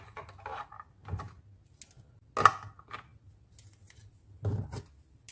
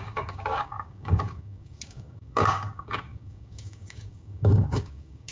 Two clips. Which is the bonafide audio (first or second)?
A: first